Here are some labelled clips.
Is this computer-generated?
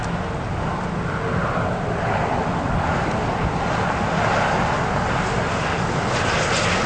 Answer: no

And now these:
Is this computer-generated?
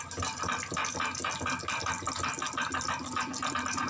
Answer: no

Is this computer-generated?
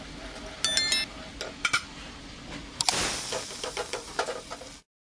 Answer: no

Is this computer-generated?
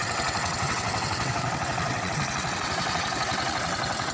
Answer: yes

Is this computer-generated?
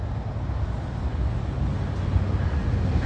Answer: no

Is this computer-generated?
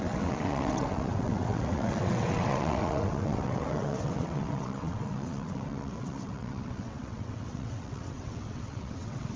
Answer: yes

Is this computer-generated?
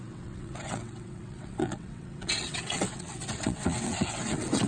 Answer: yes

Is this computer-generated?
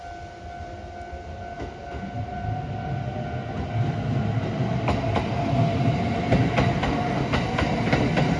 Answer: no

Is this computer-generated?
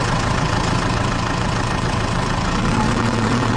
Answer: yes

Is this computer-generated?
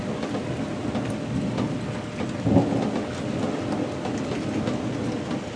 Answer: no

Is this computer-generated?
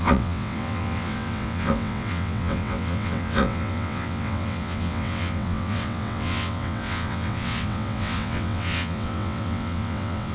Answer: yes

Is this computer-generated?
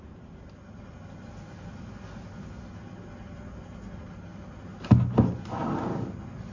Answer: no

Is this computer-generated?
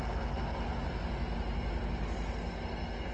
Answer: no